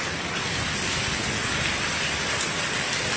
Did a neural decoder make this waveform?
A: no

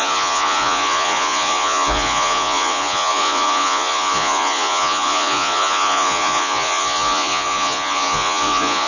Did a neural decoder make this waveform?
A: yes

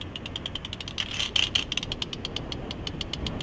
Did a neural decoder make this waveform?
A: no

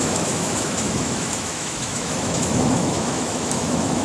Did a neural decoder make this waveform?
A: yes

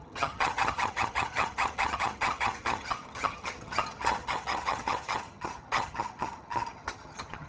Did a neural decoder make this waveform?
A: yes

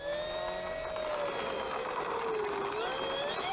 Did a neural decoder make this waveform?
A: no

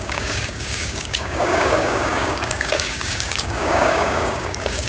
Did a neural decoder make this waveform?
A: yes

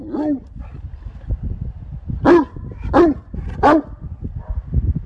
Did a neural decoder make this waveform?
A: no